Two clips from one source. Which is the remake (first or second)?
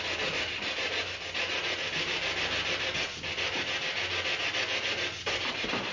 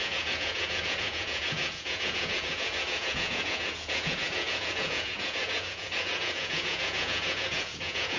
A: second